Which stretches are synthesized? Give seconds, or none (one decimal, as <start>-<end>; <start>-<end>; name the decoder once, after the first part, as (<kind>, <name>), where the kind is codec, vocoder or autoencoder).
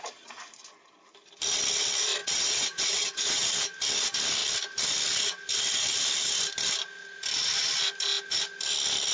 2.2-3.5 (vocoder, WaveNeXt)